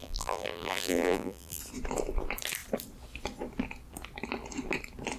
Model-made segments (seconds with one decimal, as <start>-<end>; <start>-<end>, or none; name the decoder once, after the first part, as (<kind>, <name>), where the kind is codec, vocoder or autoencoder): 0.0-1.6 (vocoder, BigVGAN v2)